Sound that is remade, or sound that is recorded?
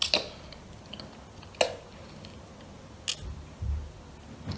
recorded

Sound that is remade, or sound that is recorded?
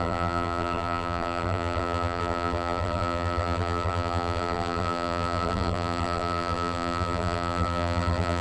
remade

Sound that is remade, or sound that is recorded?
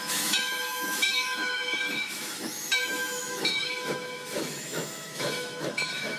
remade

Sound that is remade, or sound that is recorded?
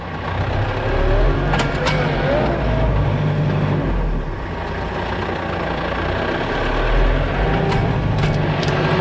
recorded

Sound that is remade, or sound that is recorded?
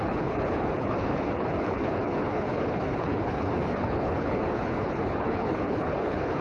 remade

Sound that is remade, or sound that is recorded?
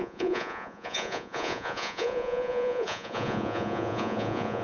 remade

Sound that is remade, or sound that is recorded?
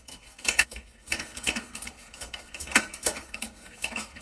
remade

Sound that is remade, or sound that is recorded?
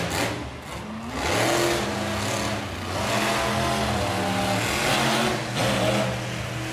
recorded